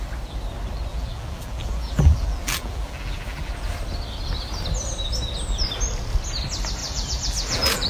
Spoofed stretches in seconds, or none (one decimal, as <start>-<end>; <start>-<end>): 0.9-3.5; 6.8-7.9